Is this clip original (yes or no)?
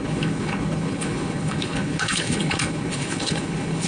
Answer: no